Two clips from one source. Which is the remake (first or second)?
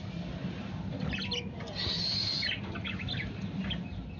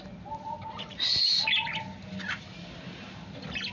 first